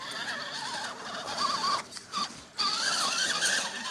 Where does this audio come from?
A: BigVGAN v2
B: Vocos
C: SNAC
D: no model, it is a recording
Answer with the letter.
A